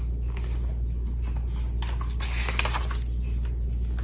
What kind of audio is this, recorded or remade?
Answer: recorded